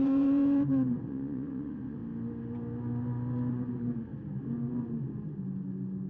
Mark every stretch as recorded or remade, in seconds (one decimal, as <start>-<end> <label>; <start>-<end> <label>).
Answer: 0.0-2.0 remade; 2.0-3.5 recorded; 3.5-4.1 remade; 4.1-6.1 recorded